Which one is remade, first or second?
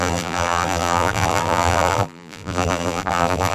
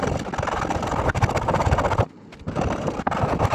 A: first